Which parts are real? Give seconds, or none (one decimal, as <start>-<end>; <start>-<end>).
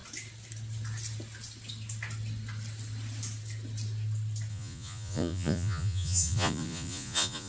0.0-4.5